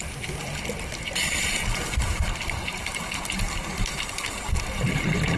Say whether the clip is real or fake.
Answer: real